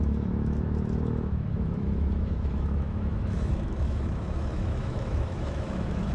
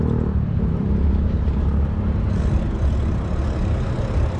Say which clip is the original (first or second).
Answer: second